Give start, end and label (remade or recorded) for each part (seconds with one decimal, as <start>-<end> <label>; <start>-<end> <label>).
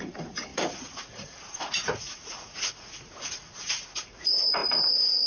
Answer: 0.0-5.3 remade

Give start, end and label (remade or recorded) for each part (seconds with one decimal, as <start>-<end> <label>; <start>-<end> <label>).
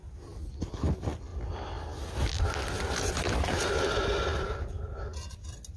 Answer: 0.0-5.8 recorded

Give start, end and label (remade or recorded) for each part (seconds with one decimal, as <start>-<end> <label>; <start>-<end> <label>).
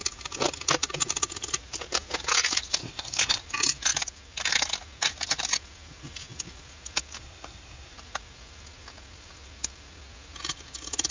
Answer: 0.0-2.8 recorded; 2.8-3.4 remade; 3.4-7.2 recorded; 7.2-7.9 remade; 7.9-11.1 recorded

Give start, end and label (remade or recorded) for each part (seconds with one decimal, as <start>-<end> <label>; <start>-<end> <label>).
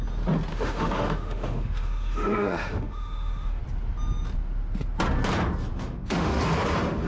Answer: 0.0-0.5 recorded; 0.5-3.6 remade; 3.6-5.7 recorded; 5.7-6.4 remade; 6.4-7.1 recorded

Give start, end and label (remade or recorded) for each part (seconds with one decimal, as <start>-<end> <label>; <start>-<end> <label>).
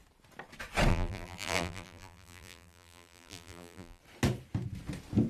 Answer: 0.0-0.9 recorded; 0.9-4.0 remade; 4.0-5.3 recorded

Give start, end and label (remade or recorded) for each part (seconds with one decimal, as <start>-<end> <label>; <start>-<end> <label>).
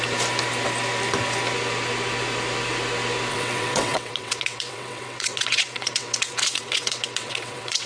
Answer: 0.0-3.3 recorded; 3.3-7.9 remade